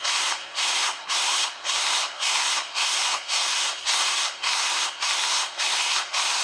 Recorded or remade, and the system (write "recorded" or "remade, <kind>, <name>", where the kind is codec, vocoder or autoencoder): remade, codec, SNAC